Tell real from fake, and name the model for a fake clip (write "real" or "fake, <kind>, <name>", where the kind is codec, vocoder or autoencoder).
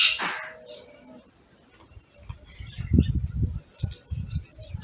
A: real